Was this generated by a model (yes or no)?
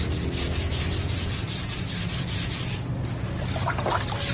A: no